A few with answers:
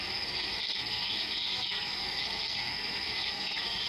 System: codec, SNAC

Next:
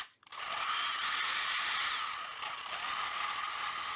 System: none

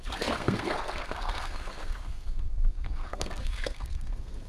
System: codec, SNAC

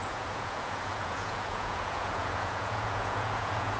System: vocoder, Vocos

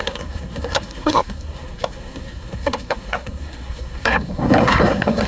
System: codec, SNAC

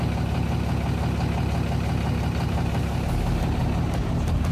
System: none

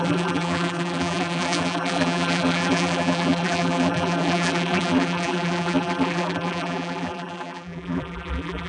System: vocoder, BigVGAN v2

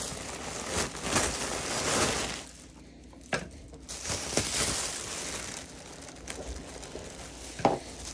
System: none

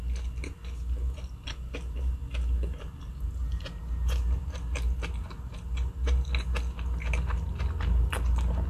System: none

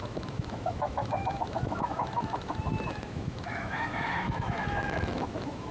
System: autoencoder, DAC-VAE